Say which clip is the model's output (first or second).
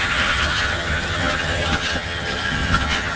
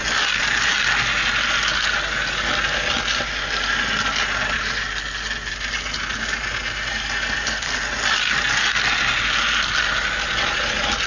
first